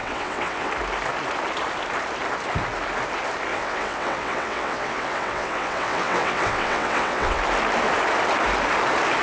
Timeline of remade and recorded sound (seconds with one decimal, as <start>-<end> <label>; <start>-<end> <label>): 0.0-0.7 remade; 0.7-3.5 recorded; 3.5-7.4 remade; 7.4-9.2 recorded